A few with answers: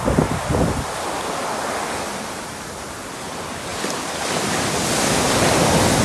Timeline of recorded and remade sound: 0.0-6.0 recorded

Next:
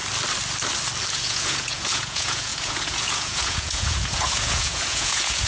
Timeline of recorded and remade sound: 0.0-1.1 recorded; 1.1-5.5 remade